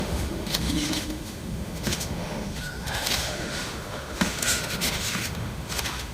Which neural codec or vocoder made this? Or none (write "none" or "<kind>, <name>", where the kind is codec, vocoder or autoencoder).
autoencoder, DAC-VAE